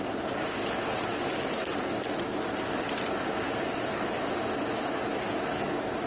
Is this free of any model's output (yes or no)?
yes